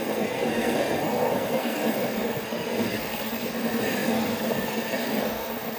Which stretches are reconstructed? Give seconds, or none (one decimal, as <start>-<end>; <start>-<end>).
0.0-5.8